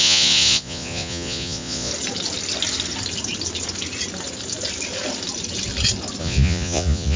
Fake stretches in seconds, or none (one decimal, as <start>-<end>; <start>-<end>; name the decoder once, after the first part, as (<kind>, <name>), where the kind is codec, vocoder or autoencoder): 0.0-1.9 (vocoder, Vocos); 6.2-7.2